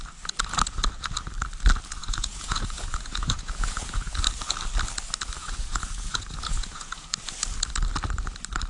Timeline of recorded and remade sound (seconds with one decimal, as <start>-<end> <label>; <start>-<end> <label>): 0.0-2.0 recorded; 2.0-4.2 remade; 4.2-5.4 recorded; 5.4-7.1 remade; 7.1-8.7 recorded